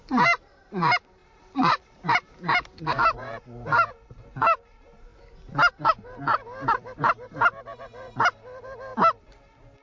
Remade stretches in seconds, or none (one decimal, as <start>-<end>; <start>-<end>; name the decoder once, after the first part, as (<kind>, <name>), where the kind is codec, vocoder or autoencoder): 0.0-5.1 (vocoder, BigVGAN v2); 5.9-8.9